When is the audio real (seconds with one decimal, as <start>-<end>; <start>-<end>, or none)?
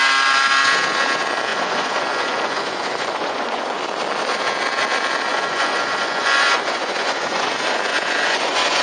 0.0-1.5; 3.8-5.3; 7.5-7.9